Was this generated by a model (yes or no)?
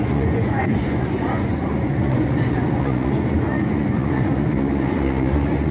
yes